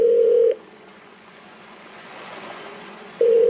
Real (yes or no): no